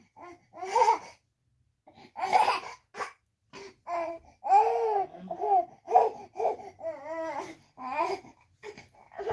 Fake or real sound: real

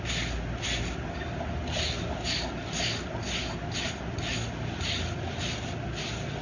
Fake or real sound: real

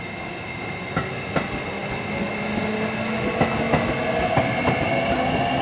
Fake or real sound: real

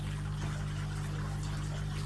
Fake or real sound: real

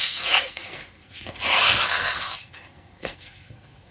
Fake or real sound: fake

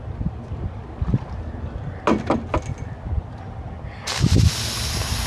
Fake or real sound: real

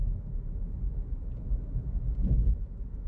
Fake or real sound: real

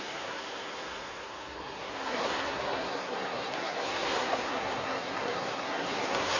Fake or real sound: fake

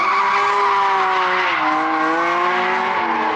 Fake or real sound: real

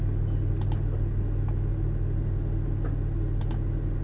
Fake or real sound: real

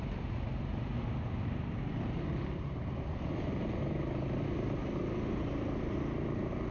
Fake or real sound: real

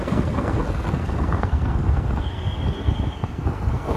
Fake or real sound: fake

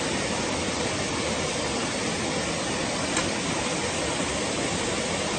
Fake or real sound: real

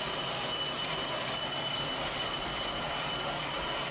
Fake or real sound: real